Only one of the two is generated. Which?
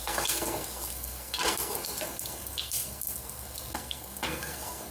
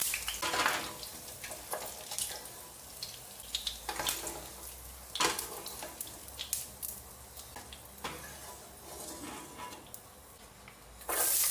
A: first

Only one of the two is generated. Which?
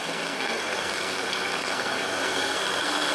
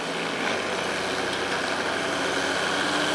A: first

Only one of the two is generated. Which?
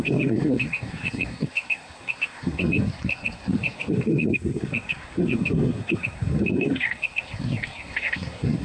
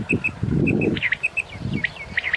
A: first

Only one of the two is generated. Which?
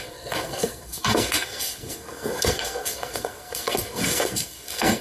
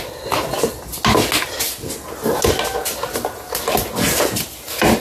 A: first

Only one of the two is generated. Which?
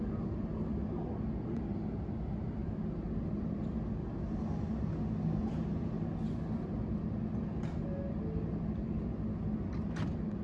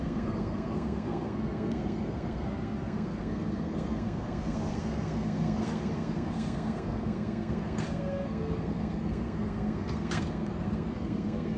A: second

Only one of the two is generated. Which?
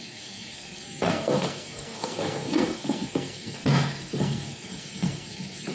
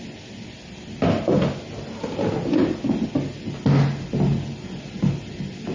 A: first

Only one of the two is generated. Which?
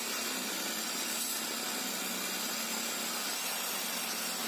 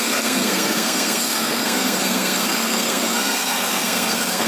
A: second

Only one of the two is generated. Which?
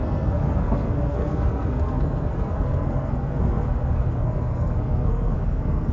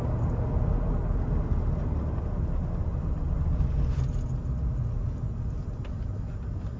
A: first